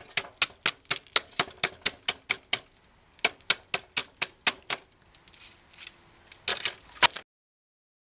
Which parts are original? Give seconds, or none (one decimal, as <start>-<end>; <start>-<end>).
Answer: 0.0-8.0